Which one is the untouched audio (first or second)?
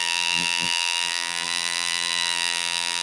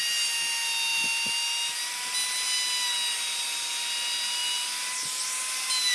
second